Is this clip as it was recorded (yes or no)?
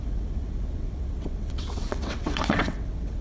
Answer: no